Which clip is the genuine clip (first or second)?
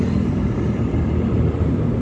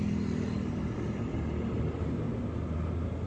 second